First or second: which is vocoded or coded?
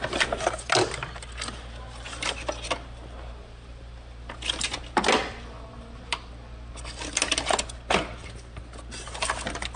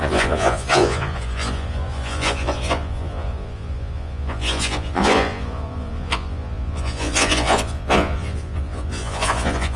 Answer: second